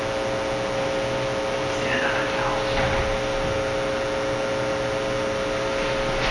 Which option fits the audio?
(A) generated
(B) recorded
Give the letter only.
B